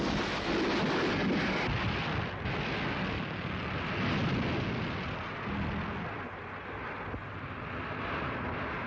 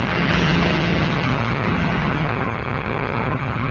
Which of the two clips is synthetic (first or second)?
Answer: second